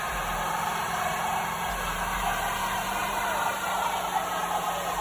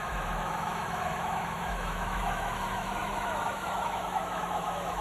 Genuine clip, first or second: first